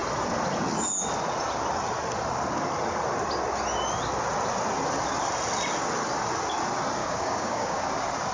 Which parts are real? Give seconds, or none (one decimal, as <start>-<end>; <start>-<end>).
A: 0.0-7.0; 7.8-8.3